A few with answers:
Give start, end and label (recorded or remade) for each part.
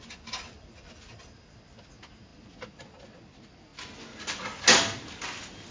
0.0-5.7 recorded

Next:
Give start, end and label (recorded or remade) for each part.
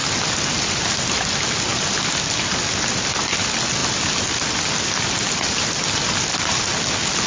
0.0-7.3 recorded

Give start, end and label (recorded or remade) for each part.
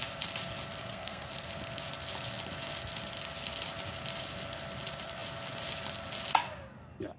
0.0-0.8 recorded; 0.8-1.3 remade; 1.3-7.2 recorded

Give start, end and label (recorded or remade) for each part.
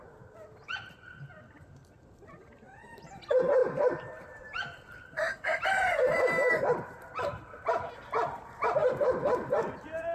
0.0-3.6 recorded; 3.6-7.9 remade; 7.9-8.8 recorded; 8.8-9.5 remade; 9.5-10.1 recorded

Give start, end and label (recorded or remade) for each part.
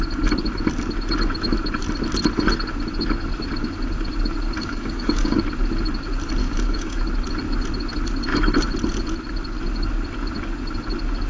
0.0-4.6 recorded; 4.6-5.4 remade; 5.4-6.4 recorded; 6.4-7.0 remade; 7.0-11.3 recorded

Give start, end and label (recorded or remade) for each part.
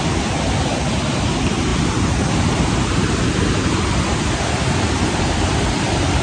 0.0-6.2 recorded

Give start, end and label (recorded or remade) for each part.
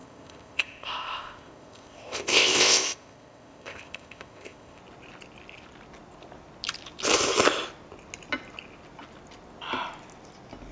0.0-4.8 remade; 4.8-10.7 recorded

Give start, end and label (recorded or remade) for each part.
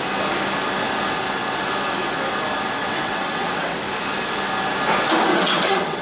0.0-2.8 recorded; 2.8-3.8 remade; 3.8-5.3 recorded; 5.3-6.0 remade